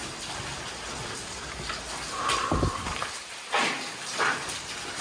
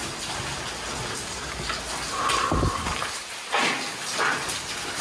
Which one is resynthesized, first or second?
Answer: first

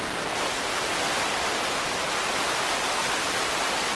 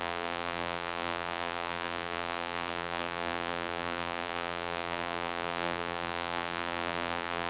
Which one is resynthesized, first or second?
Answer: second